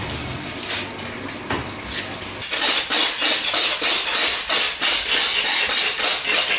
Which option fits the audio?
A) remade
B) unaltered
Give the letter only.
B